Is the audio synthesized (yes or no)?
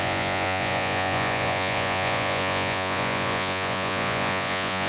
yes